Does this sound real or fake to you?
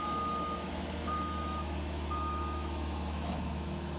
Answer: fake